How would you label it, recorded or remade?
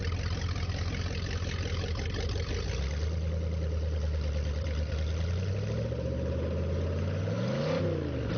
recorded